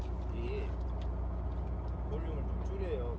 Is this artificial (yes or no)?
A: no